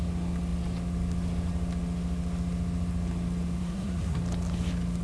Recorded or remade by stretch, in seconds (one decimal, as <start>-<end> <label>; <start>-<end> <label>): 0.0-3.6 recorded; 3.6-4.2 remade; 4.2-5.0 recorded